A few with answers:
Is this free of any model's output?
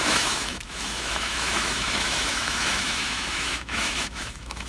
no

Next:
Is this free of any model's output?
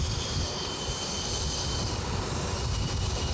yes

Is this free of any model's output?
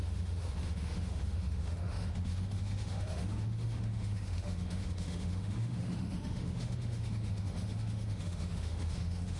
no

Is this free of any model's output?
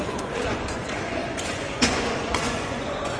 no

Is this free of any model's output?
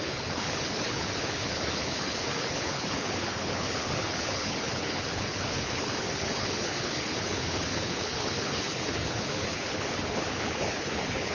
no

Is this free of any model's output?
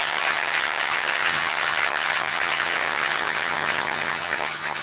no